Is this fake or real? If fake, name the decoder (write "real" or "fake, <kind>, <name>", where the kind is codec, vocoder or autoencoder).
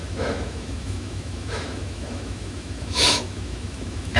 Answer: fake, autoencoder, DAC-VAE